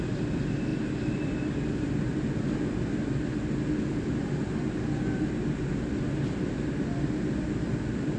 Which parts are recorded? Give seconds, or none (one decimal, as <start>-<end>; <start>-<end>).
0.0-8.2